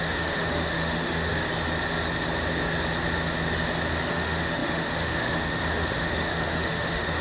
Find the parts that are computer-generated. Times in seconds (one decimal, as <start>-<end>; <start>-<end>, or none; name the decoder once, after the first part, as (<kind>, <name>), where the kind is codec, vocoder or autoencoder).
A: 0.0-1.3 (autoencoder, DAC-VAE); 4.1-7.2